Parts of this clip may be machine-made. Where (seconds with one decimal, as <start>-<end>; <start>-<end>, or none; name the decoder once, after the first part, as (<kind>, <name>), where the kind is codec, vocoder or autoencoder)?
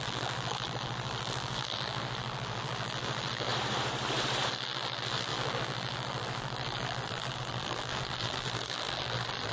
0.0-3.5 (vocoder, BigVGAN v2); 4.5-9.5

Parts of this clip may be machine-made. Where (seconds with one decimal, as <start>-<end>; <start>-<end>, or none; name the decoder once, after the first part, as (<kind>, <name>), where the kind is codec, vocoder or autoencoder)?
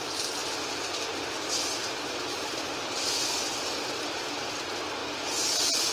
none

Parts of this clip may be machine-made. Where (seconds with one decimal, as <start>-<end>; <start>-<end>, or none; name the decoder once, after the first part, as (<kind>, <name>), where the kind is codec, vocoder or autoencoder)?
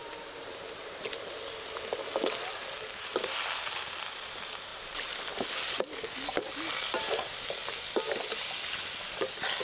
none